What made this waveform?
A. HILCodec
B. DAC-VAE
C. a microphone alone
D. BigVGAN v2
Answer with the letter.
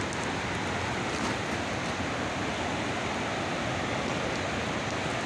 C